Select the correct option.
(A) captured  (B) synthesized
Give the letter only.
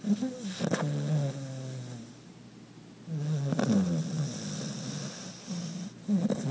A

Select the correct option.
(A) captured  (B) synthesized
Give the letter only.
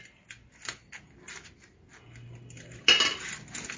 A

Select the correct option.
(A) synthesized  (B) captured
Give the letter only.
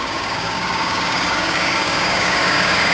A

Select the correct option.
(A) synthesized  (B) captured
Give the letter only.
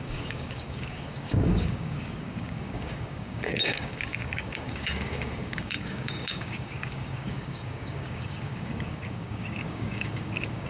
A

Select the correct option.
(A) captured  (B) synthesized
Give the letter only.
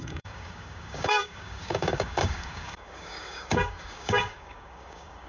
B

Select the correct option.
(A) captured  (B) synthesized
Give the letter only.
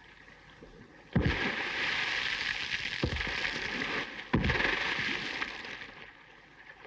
A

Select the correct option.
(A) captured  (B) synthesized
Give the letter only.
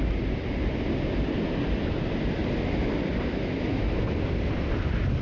A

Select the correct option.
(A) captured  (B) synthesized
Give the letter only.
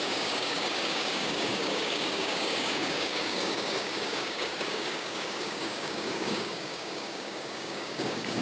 B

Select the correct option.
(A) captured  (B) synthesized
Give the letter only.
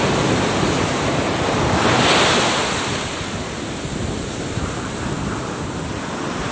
A